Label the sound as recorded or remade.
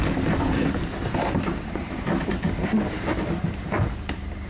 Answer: remade